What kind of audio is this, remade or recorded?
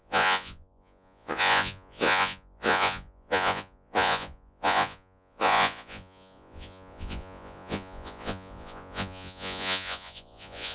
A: remade